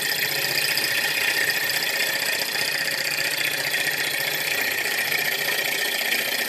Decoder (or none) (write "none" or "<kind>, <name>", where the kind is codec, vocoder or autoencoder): none